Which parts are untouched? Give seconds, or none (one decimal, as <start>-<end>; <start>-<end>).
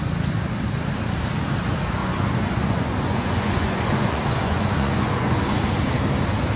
0.0-2.0; 5.4-6.6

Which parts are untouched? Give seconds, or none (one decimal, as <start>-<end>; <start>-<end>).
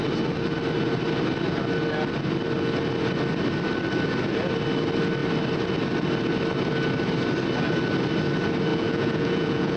0.0-8.7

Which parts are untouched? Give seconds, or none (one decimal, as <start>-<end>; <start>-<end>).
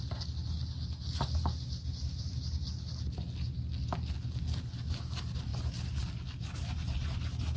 0.0-7.6